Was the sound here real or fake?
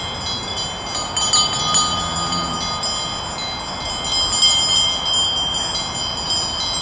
real